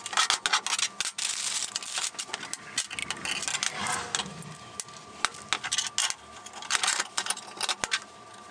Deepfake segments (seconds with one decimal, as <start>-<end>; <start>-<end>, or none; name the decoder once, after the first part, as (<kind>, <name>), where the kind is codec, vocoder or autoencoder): none